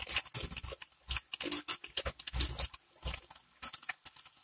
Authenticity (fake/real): real